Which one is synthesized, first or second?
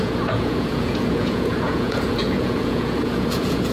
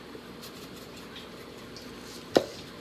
first